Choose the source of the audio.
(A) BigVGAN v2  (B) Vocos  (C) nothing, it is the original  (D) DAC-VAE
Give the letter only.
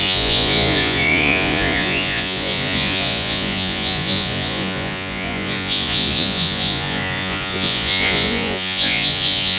B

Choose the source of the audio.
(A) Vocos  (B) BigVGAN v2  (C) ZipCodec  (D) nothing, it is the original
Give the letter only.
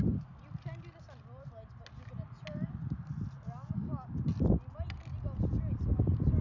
D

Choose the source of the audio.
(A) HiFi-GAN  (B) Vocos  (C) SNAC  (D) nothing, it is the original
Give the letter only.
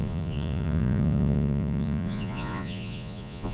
B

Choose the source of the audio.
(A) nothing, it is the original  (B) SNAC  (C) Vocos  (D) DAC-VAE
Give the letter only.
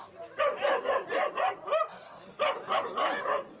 A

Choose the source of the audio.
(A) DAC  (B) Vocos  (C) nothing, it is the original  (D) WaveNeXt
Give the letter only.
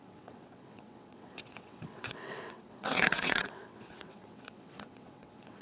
D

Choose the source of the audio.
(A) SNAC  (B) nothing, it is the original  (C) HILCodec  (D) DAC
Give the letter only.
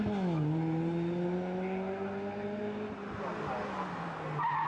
B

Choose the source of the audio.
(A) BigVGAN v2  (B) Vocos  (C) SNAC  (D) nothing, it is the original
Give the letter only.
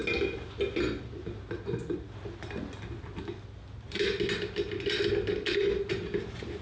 D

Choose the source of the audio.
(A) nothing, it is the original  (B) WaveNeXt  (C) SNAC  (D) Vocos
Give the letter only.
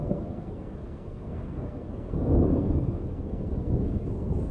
C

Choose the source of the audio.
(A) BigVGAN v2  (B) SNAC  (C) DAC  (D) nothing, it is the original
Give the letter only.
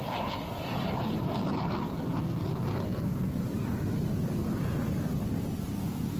D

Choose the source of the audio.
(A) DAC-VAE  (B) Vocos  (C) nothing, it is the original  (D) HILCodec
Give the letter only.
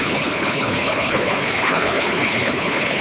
D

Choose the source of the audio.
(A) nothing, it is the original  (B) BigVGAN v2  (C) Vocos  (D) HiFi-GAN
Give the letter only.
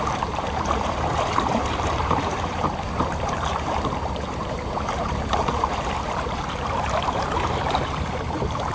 B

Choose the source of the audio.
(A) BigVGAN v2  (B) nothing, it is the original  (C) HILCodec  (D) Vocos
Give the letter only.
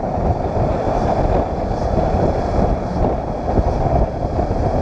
B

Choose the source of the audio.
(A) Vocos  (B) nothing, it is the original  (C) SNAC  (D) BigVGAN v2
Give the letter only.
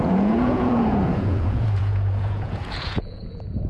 A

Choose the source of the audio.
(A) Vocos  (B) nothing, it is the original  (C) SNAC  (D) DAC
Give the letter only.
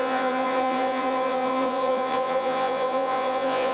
A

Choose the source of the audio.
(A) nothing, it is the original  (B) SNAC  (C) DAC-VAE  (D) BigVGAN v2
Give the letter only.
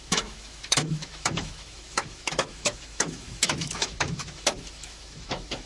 C